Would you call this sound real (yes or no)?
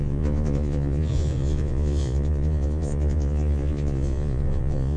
no